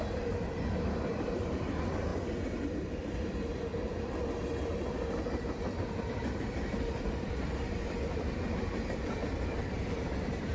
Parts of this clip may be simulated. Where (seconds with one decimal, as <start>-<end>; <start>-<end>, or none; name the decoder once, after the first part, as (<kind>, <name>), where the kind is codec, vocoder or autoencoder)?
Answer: 0.0-2.1 (vocoder, BigVGAN v2); 2.7-3.7; 6.1-10.5